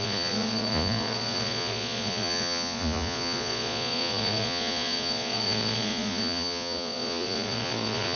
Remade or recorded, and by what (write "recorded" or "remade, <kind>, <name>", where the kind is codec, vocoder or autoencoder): remade, vocoder, Vocos